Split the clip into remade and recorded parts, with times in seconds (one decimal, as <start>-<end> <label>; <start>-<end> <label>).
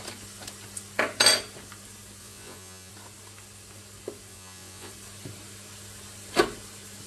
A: 0.0-2.2 recorded; 2.2-2.9 remade; 2.9-4.3 recorded; 4.3-4.9 remade; 4.9-7.1 recorded